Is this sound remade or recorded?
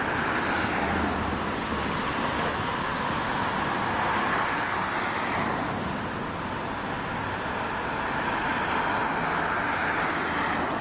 recorded